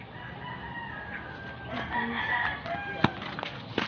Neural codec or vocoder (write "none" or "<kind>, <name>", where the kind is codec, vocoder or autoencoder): none